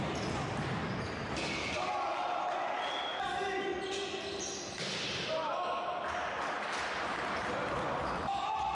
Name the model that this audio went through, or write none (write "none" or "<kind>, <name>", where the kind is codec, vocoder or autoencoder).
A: none